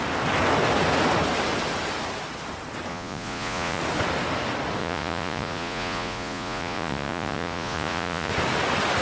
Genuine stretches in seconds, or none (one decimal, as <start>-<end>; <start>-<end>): 0.0-2.9; 3.8-4.8; 8.3-9.0